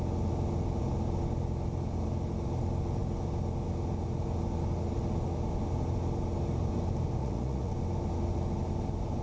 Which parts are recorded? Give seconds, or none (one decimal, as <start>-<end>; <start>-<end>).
0.0-7.2; 7.7-9.2

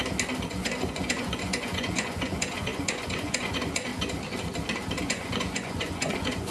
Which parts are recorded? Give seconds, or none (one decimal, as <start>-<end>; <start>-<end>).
0.0-0.5; 3.9-5.0

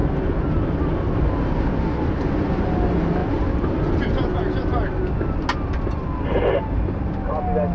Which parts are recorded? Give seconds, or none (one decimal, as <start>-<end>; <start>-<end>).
0.0-7.7